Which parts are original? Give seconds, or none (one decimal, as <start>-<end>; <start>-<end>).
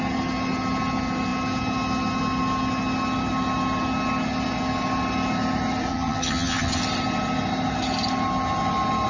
0.0-5.9; 6.8-9.1